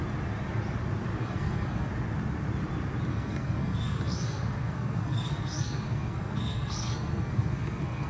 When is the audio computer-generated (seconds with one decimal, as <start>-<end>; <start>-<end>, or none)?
1.2-1.9; 3.1-8.1